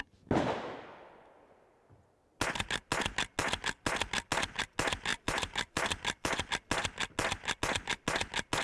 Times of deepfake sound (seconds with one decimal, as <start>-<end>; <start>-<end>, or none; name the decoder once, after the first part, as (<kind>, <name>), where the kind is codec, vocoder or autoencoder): 5.1-6.5 (vocoder, BigVGAN v2)